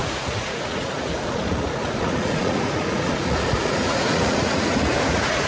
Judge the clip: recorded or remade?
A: remade